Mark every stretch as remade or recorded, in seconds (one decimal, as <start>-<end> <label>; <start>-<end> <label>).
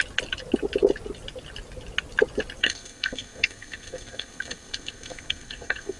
0.0-2.6 recorded; 2.6-6.0 remade